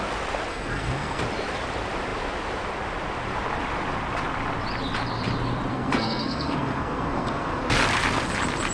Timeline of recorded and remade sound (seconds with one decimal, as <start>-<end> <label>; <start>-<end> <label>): 0.0-0.5 recorded; 0.5-1.2 remade; 1.2-5.7 recorded; 5.7-7.6 remade; 7.6-8.7 recorded